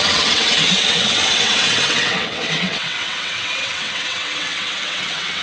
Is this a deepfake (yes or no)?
yes